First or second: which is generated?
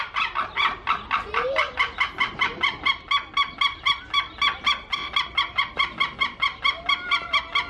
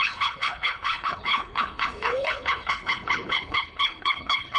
second